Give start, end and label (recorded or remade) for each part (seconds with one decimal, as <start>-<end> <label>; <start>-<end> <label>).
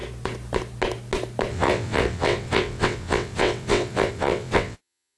0.0-1.5 recorded; 1.5-5.2 remade